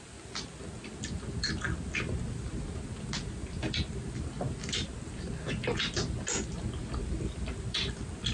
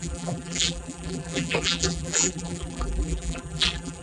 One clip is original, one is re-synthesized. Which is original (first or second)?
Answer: first